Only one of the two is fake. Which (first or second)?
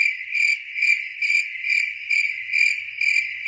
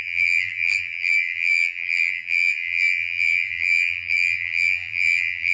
second